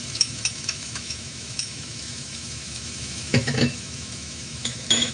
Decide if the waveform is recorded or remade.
remade